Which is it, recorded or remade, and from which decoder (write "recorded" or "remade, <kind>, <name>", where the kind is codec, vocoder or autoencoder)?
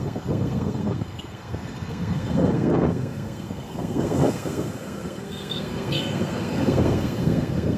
remade, codec, SNAC